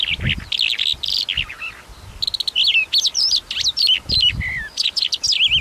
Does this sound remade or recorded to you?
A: recorded